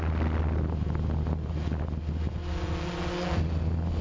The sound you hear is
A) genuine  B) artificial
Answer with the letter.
A